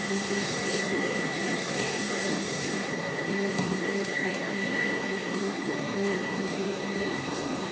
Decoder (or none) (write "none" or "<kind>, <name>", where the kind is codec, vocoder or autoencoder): codec, SNAC